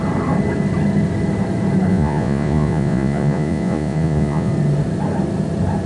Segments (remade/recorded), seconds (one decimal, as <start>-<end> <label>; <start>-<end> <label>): 0.0-1.9 recorded; 1.9-4.5 remade; 4.5-5.9 recorded